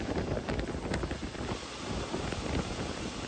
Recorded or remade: recorded